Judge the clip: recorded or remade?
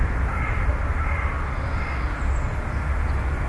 recorded